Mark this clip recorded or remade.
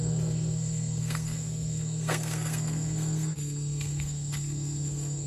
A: remade